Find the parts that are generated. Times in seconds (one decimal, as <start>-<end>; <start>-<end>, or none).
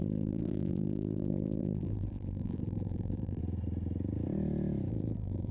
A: 0.0-3.4; 4.9-5.5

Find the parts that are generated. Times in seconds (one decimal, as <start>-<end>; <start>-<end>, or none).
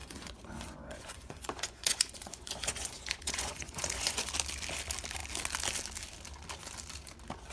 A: 0.0-4.3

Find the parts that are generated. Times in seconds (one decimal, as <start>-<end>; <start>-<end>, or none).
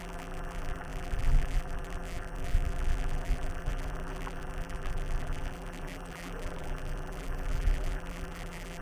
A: 0.0-8.8